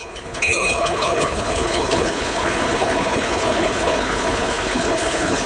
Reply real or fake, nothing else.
fake